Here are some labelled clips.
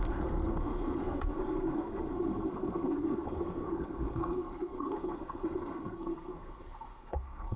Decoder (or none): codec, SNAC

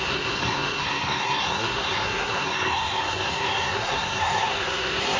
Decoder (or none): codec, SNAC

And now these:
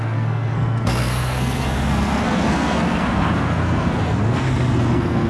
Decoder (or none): codec, SNAC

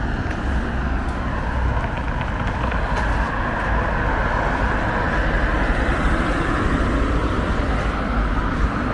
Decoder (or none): none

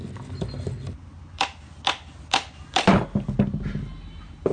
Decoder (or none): none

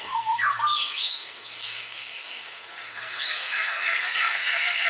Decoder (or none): codec, SNAC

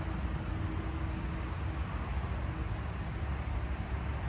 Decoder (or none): none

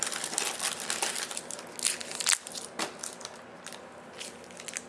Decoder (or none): none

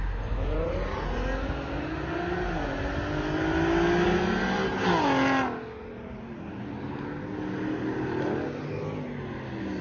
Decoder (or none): none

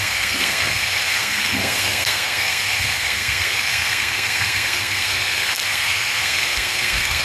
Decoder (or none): codec, SNAC